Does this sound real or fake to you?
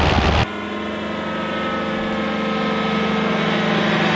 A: real